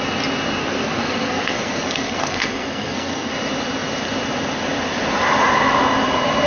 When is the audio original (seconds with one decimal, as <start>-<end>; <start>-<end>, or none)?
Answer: 0.0-0.6; 3.3-6.5